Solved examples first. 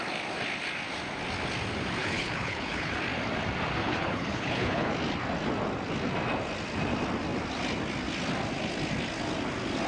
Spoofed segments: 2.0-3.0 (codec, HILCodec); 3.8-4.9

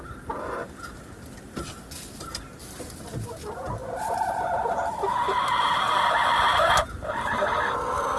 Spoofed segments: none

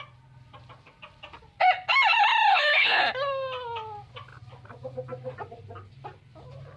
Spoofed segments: 2.5-3.0 (codec, HILCodec)

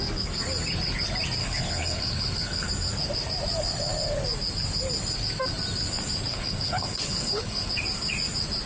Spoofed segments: 1.4-2.7 (codec, HILCodec); 6.3-7.7

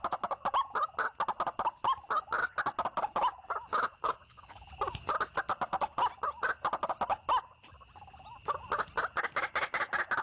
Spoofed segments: 3.9-4.7 (codec, HILCodec)